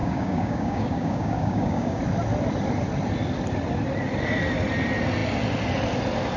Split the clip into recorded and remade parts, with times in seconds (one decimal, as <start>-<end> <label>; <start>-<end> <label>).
0.0-2.0 remade; 2.0-6.4 recorded